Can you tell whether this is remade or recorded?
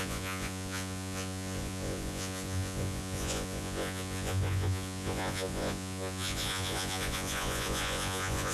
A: remade